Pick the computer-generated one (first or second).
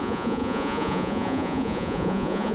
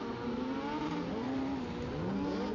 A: first